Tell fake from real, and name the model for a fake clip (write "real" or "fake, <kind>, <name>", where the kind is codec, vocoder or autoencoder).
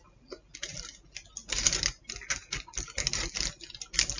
real